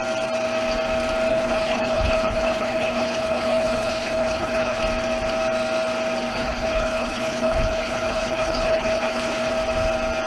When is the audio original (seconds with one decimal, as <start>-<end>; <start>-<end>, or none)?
0.0-1.3; 4.8-6.3; 9.5-10.3